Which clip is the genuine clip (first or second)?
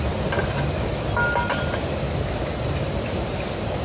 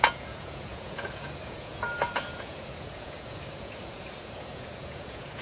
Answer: first